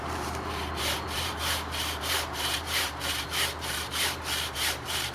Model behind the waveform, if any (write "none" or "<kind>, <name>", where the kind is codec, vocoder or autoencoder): vocoder, BigVGAN v2